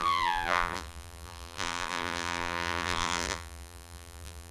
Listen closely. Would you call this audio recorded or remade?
remade